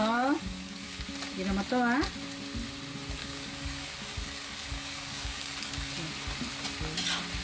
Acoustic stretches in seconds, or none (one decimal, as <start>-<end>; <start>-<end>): 1.0-3.2; 5.9-7.4